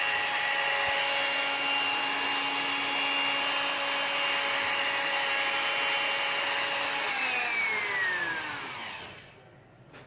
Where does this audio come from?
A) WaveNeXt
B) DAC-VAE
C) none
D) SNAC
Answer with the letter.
C